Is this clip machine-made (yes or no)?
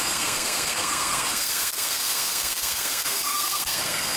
yes